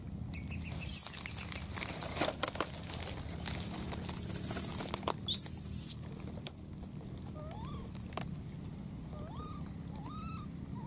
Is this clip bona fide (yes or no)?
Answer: yes